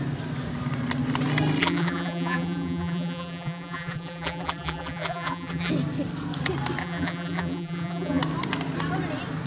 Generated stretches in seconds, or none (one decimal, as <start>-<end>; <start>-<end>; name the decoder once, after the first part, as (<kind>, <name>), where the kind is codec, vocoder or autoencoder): 1.6-5.7 (vocoder, BigVGAN v2); 6.8-8.2